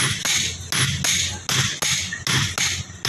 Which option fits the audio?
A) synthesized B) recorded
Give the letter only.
B